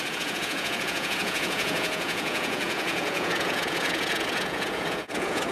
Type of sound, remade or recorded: remade